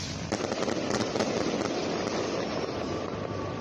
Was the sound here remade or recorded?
recorded